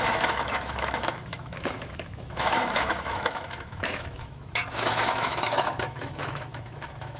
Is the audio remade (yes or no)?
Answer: yes